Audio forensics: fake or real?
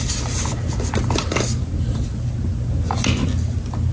real